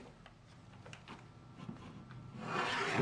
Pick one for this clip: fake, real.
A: real